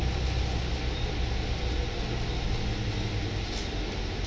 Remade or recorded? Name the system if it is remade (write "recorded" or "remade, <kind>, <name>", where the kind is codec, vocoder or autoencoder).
recorded